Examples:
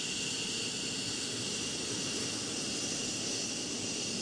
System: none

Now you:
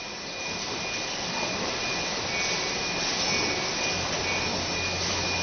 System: none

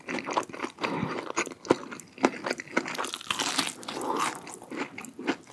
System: none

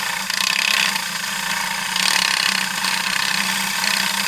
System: none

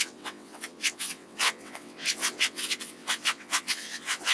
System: vocoder, WaveNeXt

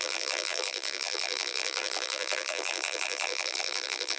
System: vocoder, BigVGAN v2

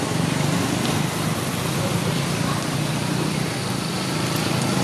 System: none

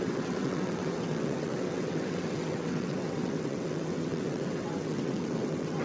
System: vocoder, WaveNeXt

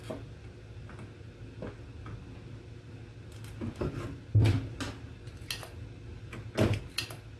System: none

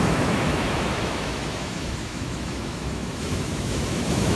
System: autoencoder, DAC-VAE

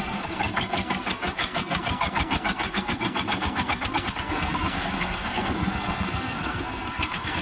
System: codec, SNAC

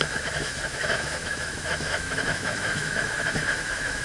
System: autoencoder, DAC-VAE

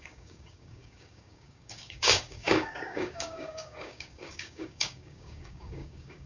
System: codec, DAC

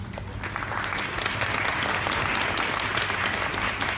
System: none